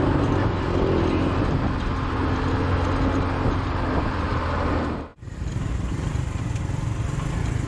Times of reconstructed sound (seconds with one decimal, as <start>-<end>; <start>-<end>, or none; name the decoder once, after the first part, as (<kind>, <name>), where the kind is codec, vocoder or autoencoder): 5.1-6.4 (vocoder, BigVGAN v2)